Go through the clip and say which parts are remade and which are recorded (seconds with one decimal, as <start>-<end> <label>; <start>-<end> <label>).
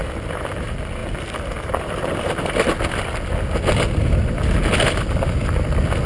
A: 0.0-6.1 recorded